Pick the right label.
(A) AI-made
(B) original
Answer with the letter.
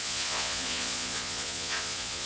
A